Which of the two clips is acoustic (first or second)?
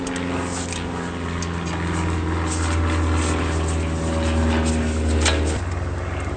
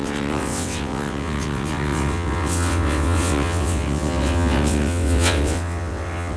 first